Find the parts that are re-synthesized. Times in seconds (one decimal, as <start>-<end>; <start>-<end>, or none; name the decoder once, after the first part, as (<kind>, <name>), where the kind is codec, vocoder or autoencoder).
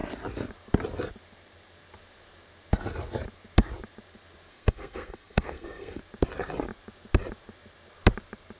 4.5-6.0 (codec, SNAC)